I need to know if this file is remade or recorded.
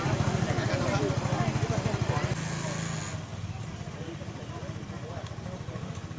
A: recorded